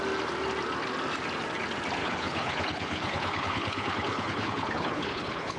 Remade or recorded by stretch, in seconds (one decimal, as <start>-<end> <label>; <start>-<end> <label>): 0.0-2.0 recorded; 2.0-5.6 remade